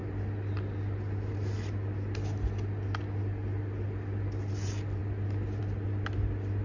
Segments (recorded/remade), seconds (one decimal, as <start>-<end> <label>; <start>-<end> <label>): 0.0-6.6 recorded